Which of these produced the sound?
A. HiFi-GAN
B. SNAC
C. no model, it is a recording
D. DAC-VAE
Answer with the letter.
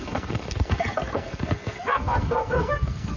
B